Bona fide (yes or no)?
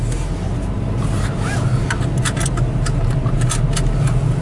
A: yes